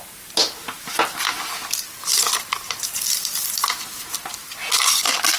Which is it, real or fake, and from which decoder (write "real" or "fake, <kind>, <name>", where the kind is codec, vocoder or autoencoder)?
real